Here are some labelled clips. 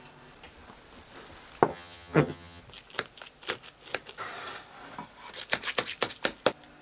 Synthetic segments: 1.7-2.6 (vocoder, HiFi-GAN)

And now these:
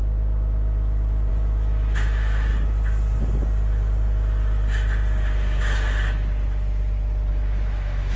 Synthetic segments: 1.3-2.5 (autoencoder, DAC-VAE); 7.3-8.2